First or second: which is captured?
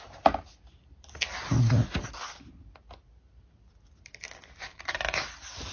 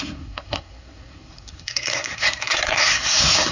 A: first